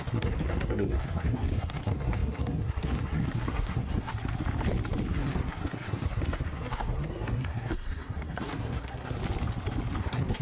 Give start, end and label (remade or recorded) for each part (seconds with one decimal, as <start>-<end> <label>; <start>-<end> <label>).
0.0-4.1 remade; 4.1-5.1 recorded; 5.1-9.2 remade; 9.2-10.0 recorded; 10.0-10.4 remade